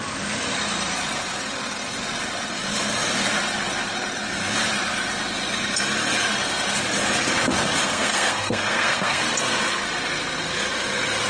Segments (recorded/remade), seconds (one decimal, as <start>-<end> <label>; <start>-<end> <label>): 0.0-7.8 recorded; 7.8-9.2 remade; 9.2-11.3 recorded